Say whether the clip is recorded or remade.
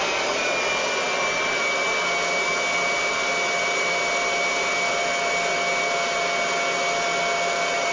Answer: recorded